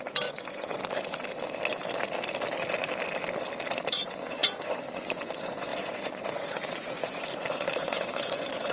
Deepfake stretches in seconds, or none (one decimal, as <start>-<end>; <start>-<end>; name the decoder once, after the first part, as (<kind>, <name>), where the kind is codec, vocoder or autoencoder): 0.0-0.8 (vocoder, Vocos); 3.9-8.7

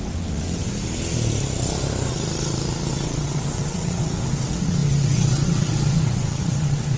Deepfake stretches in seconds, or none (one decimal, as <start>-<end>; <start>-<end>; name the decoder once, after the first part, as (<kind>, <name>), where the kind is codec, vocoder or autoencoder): 0.0-0.7 (vocoder, WaveNeXt); 2.9-7.0

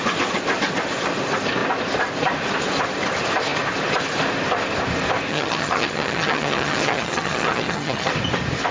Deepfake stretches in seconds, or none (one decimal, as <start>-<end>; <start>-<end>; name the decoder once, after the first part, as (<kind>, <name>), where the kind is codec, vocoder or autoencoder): 5.3-8.1 (vocoder, HiFi-GAN)

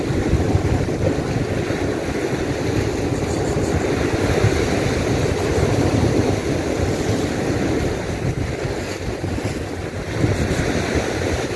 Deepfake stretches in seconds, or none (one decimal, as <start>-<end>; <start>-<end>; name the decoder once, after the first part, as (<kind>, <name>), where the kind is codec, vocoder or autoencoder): none